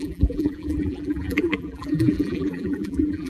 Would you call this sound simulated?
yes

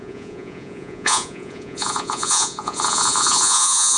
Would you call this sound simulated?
yes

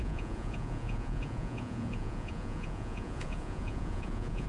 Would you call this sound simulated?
yes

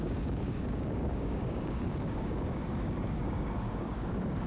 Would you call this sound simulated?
yes